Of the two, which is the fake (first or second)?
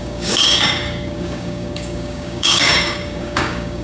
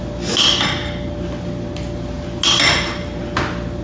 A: first